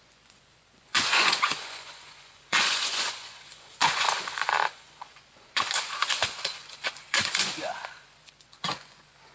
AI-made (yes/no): yes